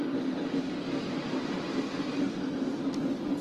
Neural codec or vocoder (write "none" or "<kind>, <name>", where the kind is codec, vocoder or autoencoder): none